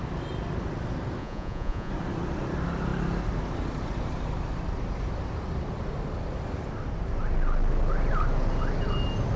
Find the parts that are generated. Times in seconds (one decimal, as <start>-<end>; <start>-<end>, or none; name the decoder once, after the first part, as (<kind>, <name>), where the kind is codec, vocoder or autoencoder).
1.2-1.9 (vocoder, Vocos)

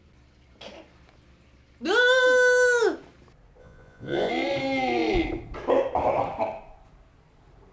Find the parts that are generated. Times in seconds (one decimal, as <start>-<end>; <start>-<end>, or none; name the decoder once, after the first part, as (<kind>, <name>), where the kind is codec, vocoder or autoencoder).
3.6-4.3 (vocoder, Vocos)

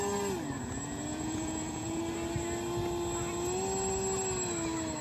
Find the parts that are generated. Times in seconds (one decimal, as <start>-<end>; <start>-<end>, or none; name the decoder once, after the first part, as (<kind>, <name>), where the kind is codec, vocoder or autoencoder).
1.1-2.0 (vocoder, Vocos)

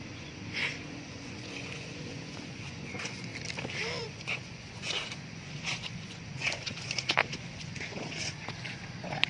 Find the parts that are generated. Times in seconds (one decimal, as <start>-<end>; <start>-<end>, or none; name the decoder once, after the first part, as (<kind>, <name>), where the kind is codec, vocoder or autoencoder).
0.0-3.3 (vocoder, Vocos); 4.0-9.3

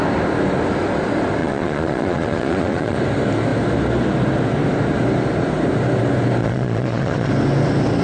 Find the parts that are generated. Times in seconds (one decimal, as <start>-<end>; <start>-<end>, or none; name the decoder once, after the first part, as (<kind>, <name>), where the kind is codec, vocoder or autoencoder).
1.4-3.0 (vocoder, Vocos); 6.4-7.3